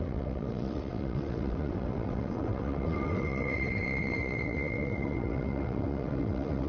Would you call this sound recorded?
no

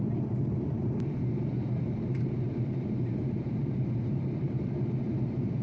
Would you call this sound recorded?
no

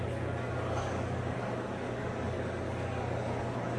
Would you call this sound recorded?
no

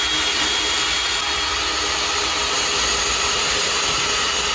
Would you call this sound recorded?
yes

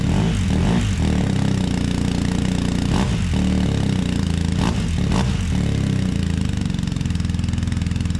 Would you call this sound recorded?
yes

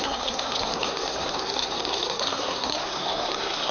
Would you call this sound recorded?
no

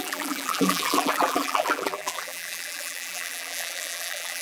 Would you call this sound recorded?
no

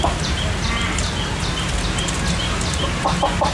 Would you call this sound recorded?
yes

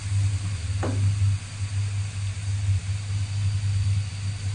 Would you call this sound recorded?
yes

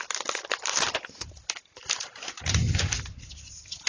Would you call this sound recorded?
yes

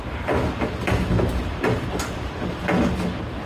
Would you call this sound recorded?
yes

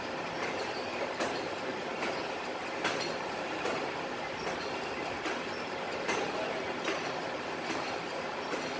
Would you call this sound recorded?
no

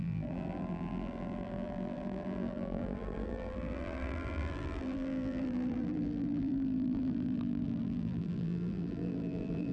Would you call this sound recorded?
no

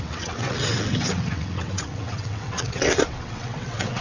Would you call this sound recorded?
no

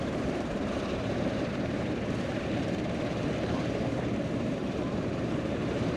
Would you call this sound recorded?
no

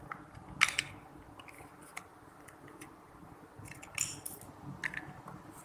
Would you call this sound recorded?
yes